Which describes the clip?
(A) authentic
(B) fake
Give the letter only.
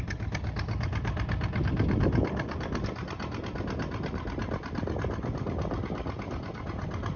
A